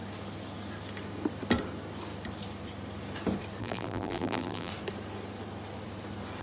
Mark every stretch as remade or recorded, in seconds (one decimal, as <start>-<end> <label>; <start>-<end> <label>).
0.0-3.6 recorded; 3.6-4.7 remade; 4.7-6.4 recorded